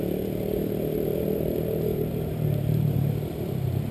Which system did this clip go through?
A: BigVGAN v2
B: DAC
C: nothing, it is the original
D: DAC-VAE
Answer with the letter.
A